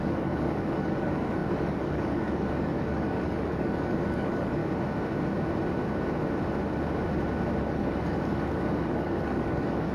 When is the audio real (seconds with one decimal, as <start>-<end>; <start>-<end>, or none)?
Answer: 4.6-7.6